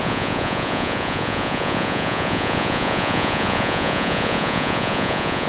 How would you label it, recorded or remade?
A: remade